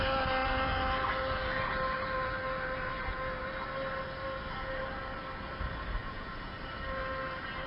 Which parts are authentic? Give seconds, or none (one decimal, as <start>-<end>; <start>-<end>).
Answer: 0.0-6.0; 6.5-7.7